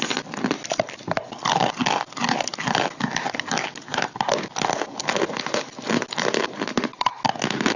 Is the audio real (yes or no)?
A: yes